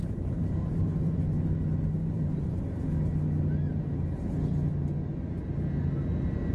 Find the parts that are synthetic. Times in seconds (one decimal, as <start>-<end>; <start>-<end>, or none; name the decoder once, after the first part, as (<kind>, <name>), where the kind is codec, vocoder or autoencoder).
0.0-1.2 (vocoder, BigVGAN v2); 2.0-2.6; 3.7-4.2

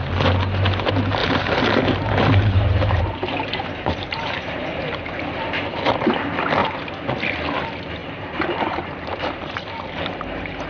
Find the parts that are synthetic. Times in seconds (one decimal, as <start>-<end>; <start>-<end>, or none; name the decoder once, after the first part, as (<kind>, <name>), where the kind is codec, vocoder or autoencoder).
1.2-4.8 (vocoder, BigVGAN v2); 8.0-10.7

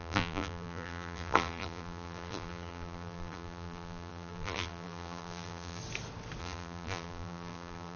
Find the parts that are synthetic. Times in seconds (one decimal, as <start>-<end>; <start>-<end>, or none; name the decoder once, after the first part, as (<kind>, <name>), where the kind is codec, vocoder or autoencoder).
0.0-5.8 (vocoder, BigVGAN v2); 6.4-8.0